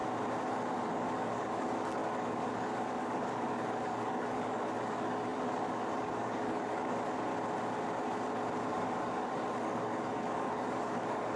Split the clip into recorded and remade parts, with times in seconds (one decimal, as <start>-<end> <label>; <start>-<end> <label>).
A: 0.0-0.8 recorded; 0.8-7.3 remade; 7.3-8.7 recorded; 8.7-11.4 remade

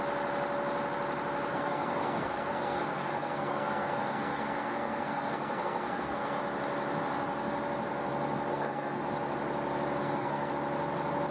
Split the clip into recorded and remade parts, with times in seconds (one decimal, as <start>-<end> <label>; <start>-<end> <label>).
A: 0.0-1.5 recorded; 1.5-6.4 remade; 6.4-8.5 recorded; 8.5-9.0 remade; 9.0-10.0 recorded; 10.0-10.5 remade; 10.5-11.3 recorded

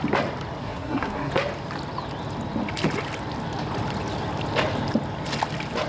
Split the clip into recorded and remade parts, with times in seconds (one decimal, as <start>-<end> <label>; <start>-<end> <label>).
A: 0.0-0.6 recorded; 0.6-1.3 remade; 1.3-5.9 recorded

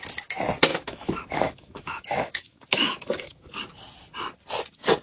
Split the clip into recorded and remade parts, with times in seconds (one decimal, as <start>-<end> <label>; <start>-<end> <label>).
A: 0.0-0.7 recorded; 0.7-3.5 remade; 3.5-5.0 recorded

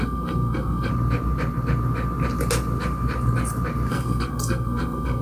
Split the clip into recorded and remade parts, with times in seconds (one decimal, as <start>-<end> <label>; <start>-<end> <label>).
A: 0.0-0.9 remade; 0.9-3.9 recorded; 3.9-5.2 remade

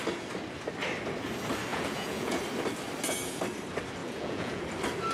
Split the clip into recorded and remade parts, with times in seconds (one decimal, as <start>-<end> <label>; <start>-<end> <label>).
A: 0.0-1.7 recorded; 1.7-2.4 remade; 2.4-4.0 recorded; 4.0-4.6 remade; 4.6-5.1 recorded

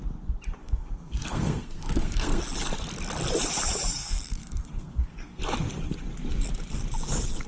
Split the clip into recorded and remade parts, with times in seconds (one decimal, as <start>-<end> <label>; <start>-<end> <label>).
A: 0.0-0.6 recorded; 0.6-2.4 remade; 2.4-4.0 recorded; 4.0-5.4 remade; 5.4-7.5 recorded